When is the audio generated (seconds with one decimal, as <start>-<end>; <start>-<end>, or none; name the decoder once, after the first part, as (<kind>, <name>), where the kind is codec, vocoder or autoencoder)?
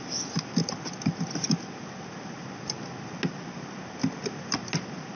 none